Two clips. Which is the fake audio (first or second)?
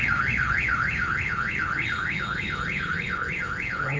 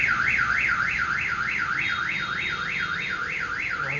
first